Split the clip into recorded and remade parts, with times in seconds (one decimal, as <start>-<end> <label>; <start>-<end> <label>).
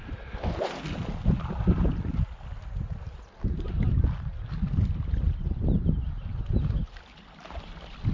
0.0-8.1 recorded